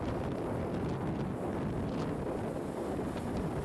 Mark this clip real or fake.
real